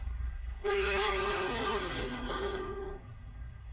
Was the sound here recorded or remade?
remade